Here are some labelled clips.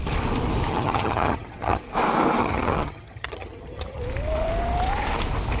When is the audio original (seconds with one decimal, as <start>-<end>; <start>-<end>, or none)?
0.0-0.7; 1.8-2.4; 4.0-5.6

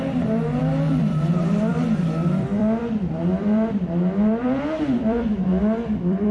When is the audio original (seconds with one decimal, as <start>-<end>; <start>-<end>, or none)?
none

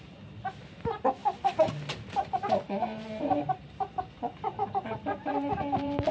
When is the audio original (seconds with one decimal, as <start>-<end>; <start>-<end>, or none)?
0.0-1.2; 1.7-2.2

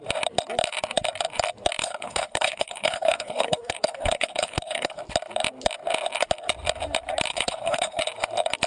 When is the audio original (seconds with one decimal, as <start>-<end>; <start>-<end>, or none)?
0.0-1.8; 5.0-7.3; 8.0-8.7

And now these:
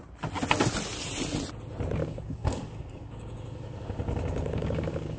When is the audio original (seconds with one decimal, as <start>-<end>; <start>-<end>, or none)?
0.0-2.0

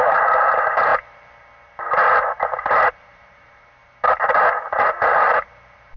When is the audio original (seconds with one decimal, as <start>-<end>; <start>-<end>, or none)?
0.9-2.9; 3.8-4.7

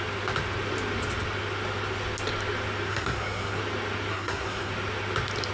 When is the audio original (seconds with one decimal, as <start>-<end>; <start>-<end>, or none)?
0.0-2.9; 3.6-4.1; 4.7-5.5

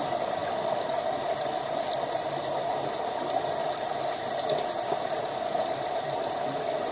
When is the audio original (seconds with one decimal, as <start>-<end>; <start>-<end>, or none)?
0.0-6.9